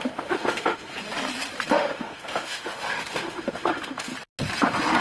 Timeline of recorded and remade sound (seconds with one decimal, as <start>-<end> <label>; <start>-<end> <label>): 0.0-0.9 remade; 0.9-1.7 recorded; 1.7-4.1 remade; 4.1-5.0 recorded